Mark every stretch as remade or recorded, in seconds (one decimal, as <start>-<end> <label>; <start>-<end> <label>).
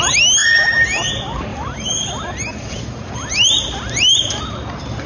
0.0-1.5 recorded; 1.5-4.4 remade; 4.4-5.1 recorded